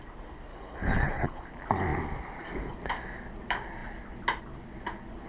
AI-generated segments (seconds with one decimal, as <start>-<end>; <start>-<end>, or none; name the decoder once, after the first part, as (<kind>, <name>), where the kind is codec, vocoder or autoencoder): 0.5-1.4 (codec, HILCodec)